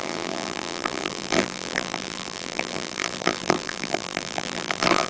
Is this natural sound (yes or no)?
no